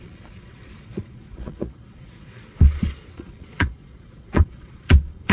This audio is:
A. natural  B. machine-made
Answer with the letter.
B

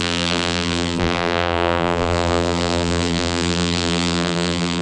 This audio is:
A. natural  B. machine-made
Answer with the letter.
B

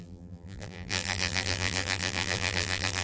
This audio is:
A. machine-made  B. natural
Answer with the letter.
A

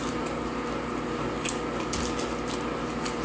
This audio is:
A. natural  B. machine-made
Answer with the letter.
A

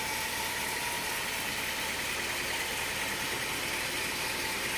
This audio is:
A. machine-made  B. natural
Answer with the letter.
B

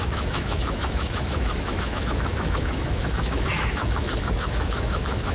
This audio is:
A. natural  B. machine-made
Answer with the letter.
B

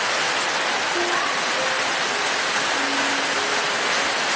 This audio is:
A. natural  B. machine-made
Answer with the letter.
A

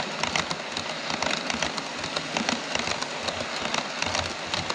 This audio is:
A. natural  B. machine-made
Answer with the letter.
A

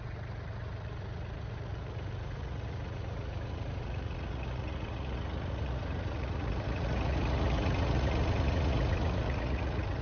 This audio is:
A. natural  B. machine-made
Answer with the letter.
B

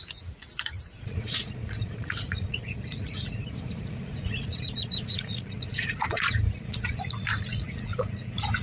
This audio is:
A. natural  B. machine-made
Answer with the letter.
B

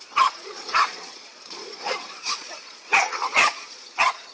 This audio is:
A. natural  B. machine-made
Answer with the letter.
B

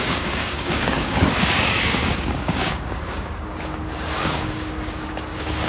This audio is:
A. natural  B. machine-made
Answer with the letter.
B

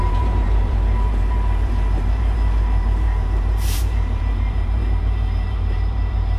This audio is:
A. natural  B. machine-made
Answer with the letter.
B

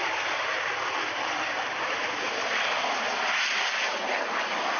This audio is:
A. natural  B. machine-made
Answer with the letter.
A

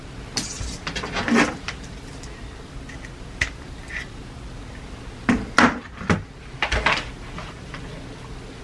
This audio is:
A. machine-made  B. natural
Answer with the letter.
B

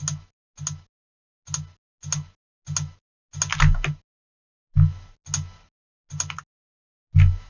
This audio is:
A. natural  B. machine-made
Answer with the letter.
A